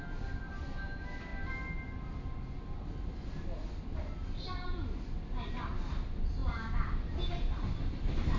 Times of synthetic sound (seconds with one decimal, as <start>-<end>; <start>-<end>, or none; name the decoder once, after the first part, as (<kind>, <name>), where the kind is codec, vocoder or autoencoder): none